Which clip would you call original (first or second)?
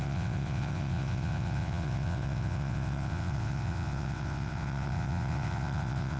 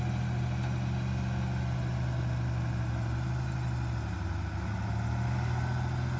second